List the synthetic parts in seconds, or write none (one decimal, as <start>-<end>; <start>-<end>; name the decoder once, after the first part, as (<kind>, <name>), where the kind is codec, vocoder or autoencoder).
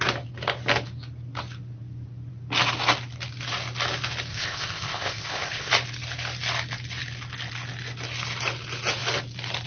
4.3-5.7 (codec, ZipCodec)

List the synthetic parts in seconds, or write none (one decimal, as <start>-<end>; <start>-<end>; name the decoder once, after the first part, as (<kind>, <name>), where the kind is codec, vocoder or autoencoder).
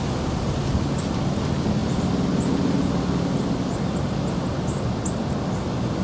none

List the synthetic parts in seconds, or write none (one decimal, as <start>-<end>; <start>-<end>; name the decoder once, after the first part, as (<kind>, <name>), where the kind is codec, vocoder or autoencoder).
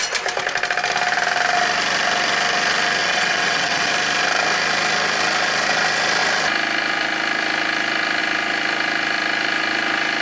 3.0-3.9 (vocoder, WaveNeXt)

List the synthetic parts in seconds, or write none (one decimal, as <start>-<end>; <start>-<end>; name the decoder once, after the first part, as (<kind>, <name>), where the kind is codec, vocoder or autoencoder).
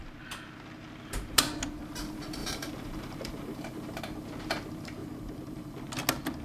2.4-4.0 (vocoder, BigVGAN v2); 5.0-5.9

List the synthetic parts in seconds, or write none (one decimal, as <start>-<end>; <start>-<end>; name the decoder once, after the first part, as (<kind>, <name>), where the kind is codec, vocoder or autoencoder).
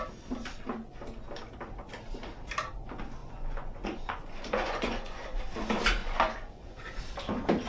3.2-5.4 (vocoder, Vocos); 6.0-7.0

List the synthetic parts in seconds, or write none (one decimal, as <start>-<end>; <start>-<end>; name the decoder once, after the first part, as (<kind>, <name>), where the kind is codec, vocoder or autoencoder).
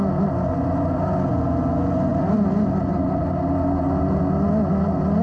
none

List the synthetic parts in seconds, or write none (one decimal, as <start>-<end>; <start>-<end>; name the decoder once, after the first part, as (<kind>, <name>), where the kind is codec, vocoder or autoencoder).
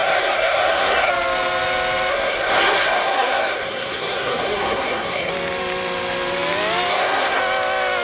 0.0-1.1 (codec, SNAC); 2.1-5.3; 6.9-7.4